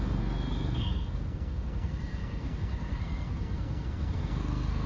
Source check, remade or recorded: remade